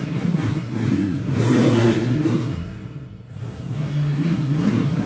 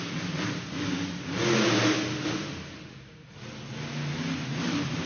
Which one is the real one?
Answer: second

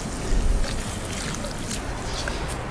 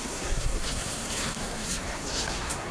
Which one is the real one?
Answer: first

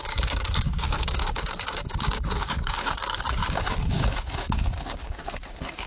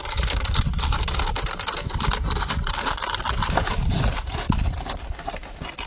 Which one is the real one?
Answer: second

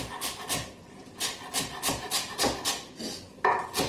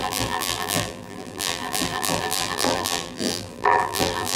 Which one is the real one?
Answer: first